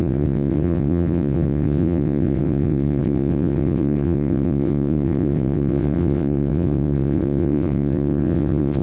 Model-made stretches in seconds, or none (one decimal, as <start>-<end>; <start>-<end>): 0.0-8.8